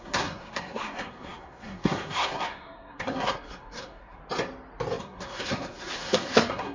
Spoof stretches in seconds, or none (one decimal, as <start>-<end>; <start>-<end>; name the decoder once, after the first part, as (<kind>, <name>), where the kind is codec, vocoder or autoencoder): 0.0-4.2 (codec, SNAC); 5.0-6.7